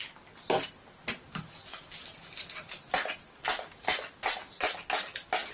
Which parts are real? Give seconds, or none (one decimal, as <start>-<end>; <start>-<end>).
0.0-5.5